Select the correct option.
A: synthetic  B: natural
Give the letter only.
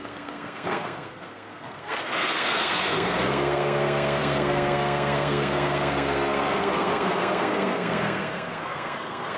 A